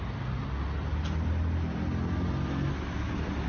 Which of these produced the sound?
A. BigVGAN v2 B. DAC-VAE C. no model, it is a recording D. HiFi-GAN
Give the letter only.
C